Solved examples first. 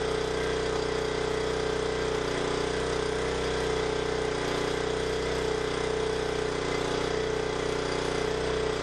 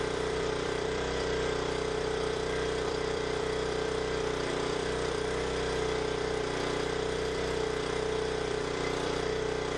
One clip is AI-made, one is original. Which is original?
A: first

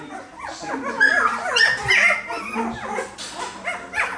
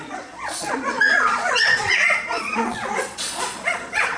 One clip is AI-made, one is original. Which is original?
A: first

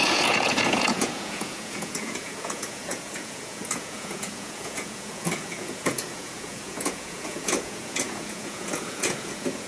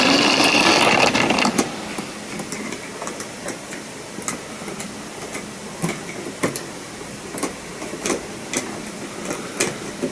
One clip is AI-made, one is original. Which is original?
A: second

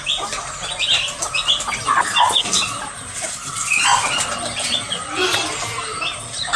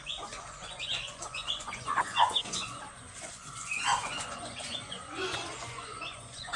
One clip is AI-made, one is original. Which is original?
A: first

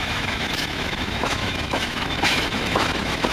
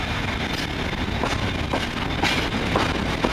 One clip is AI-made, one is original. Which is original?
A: second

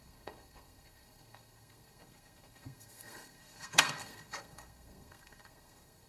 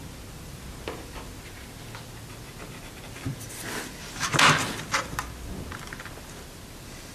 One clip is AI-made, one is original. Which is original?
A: second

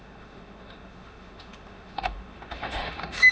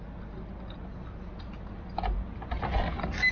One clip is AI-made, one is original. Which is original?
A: second